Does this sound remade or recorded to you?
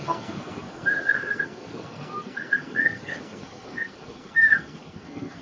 remade